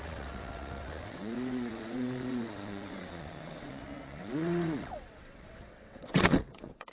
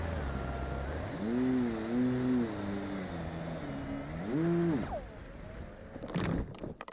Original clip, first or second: second